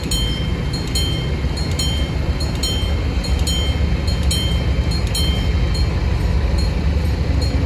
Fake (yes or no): no